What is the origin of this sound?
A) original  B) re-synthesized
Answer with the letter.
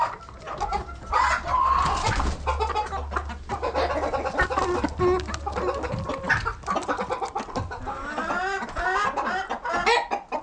A